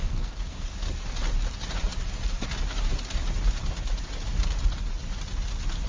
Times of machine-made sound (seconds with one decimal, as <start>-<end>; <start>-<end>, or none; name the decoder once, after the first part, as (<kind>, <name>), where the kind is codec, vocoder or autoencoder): 0.0-0.7 (codec, SNAC)